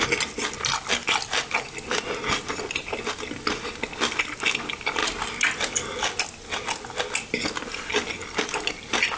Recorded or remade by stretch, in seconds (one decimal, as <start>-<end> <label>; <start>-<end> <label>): 0.0-9.2 recorded

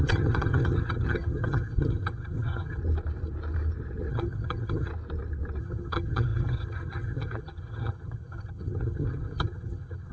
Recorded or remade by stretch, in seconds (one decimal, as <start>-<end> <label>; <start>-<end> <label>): 0.0-2.8 remade; 2.8-4.1 recorded; 4.1-4.9 remade; 4.9-5.6 recorded; 5.6-10.1 remade

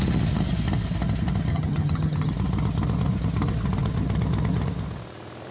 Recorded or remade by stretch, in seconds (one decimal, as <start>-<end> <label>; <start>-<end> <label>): 0.0-1.5 recorded; 1.5-2.3 remade; 2.3-5.5 recorded

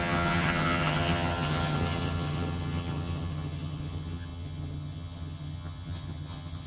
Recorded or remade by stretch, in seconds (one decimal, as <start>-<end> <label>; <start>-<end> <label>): 0.0-6.7 remade

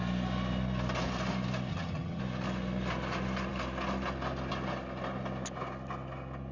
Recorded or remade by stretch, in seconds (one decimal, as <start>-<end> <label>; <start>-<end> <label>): 0.0-1.7 recorded; 1.7-2.2 remade; 2.2-6.5 recorded

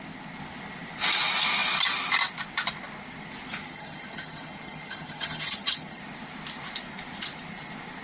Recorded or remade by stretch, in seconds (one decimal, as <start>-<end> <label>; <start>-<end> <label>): 0.0-3.6 recorded; 3.6-6.0 remade; 6.0-8.0 recorded

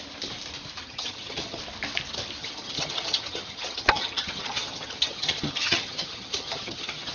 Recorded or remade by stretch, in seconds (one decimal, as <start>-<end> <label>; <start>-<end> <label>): 0.0-0.8 recorded; 0.8-1.6 remade; 1.6-2.4 recorded; 2.4-7.1 remade

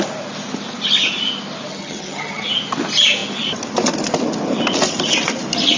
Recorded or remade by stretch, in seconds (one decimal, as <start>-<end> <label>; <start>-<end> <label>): 0.0-1.7 recorded; 1.7-2.5 remade; 2.5-5.8 recorded